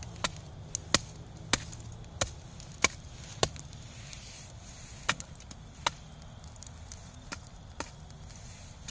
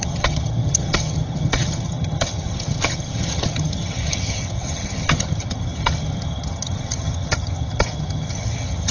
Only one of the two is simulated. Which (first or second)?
second